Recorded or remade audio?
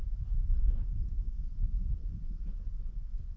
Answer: recorded